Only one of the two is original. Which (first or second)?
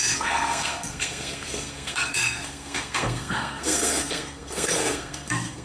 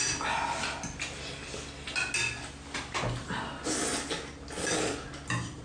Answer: second